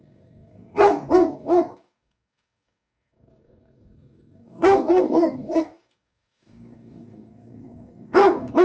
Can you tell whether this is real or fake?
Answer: fake